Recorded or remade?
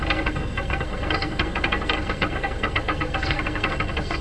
remade